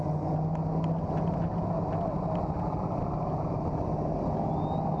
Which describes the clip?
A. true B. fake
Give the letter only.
A